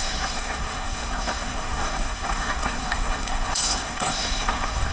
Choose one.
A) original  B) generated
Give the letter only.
B